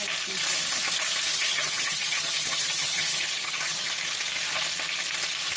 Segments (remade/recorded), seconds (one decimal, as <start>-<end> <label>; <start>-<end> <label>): 0.0-1.3 recorded; 1.3-3.9 remade; 3.9-5.6 recorded